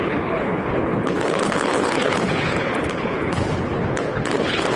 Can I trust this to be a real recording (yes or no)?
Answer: no